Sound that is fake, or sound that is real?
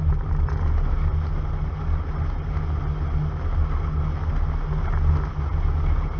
real